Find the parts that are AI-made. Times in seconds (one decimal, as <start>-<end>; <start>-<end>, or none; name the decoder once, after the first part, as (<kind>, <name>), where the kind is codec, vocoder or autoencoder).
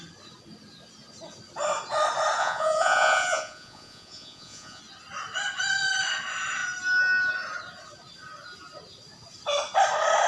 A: 2.4-4.8 (vocoder, Vocos)